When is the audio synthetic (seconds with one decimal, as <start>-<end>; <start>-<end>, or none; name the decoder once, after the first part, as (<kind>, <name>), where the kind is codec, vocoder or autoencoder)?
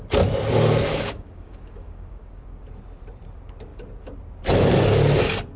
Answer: 0.9-2.6 (codec, DAC)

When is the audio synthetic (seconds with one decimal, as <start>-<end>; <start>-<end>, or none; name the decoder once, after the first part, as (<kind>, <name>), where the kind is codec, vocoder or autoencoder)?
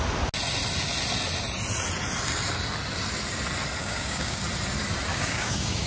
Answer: 3.8-4.4 (codec, DAC); 5.1-5.9